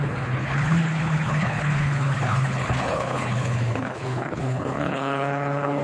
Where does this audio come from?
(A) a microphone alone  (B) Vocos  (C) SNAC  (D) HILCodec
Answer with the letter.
D